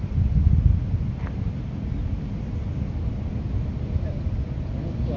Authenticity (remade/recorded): recorded